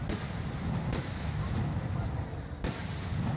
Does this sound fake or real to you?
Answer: real